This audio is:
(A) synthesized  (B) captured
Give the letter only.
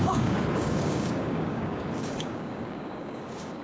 A